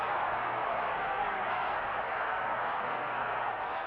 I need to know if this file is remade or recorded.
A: remade